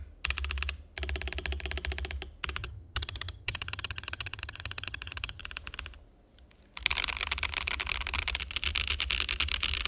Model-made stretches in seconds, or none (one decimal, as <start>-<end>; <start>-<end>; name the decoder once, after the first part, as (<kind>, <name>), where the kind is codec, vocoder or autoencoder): 2.6-5.4 (vocoder, HiFi-GAN)